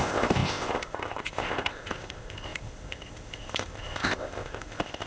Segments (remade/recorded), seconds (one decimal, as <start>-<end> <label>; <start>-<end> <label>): 0.0-5.1 remade